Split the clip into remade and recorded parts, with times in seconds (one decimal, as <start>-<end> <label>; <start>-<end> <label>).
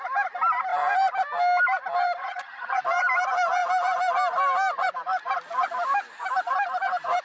0.0-2.2 recorded; 2.2-2.8 remade; 2.8-7.2 recorded